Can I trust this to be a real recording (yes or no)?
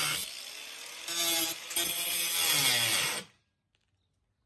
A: yes